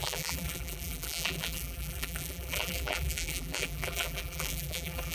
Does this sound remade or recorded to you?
remade